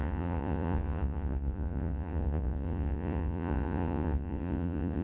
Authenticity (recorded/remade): remade